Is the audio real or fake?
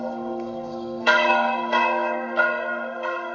fake